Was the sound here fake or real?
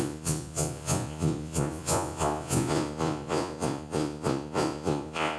fake